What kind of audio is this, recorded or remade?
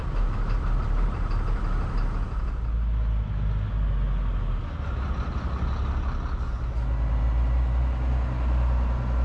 recorded